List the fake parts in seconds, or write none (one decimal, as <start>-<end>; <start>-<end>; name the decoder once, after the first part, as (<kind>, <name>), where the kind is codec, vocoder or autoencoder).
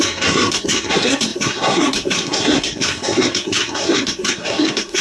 0.0-5.0 (codec, SNAC)